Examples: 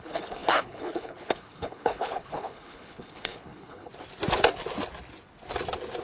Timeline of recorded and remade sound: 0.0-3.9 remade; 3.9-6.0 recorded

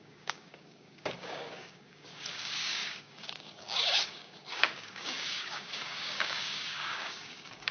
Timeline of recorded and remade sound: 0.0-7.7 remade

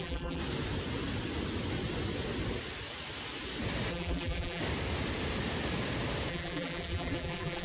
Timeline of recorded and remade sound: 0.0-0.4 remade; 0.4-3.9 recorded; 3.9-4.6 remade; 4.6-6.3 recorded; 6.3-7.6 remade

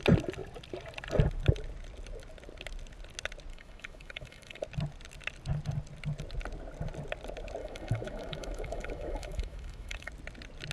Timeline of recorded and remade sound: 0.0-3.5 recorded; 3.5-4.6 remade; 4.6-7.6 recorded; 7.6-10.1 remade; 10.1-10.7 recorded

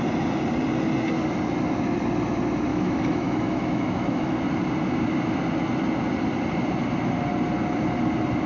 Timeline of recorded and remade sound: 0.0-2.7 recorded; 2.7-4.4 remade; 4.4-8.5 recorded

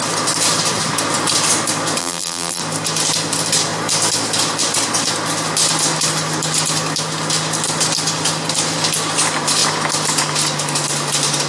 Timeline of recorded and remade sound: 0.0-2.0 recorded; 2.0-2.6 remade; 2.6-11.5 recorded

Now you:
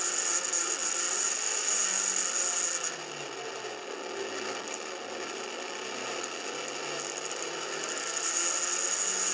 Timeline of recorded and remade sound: 0.0-9.3 recorded

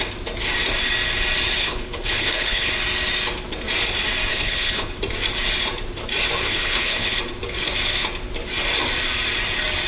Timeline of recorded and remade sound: 0.0-1.6 recorded; 1.6-2.7 remade; 2.7-4.3 recorded; 4.3-5.0 remade; 5.0-6.4 recorded; 6.4-7.2 remade; 7.2-9.9 recorded